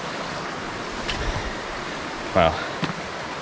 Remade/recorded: recorded